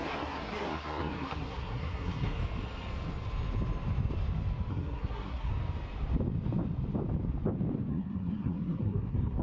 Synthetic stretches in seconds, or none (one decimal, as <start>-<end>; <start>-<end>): 0.0-2.4; 4.7-5.5; 7.9-9.4